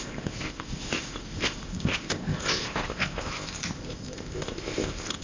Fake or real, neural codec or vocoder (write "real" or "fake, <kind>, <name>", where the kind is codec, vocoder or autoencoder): fake, codec, ZipCodec